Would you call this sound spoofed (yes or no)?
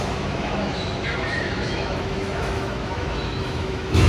yes